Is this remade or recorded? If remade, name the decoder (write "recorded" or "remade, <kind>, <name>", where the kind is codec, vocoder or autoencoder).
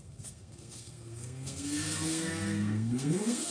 remade, codec, SNAC